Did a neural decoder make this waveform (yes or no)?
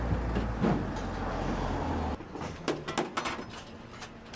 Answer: no